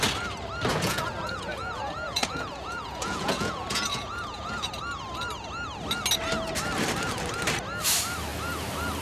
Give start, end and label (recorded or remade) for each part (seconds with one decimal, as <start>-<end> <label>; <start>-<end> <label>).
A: 0.0-0.7 recorded; 0.7-4.7 remade; 4.7-9.0 recorded